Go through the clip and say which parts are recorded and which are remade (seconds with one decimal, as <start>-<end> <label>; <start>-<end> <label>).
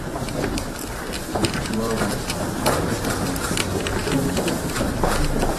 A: 0.0-1.4 recorded; 1.4-2.9 remade; 2.9-5.6 recorded